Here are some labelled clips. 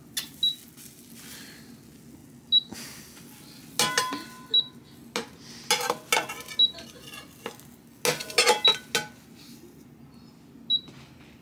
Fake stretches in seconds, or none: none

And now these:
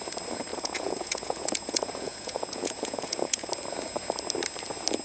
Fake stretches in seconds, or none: 0.5-3.5 (vocoder, Vocos)

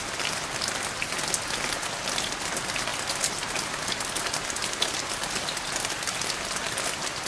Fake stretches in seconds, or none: none

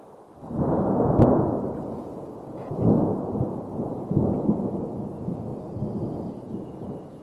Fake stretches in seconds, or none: 1.0-5.5 (vocoder, Vocos); 6.3-7.2

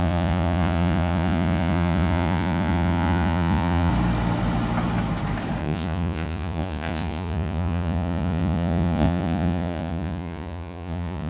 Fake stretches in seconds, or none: 0.0-3.9 (vocoder, Vocos); 5.6-11.3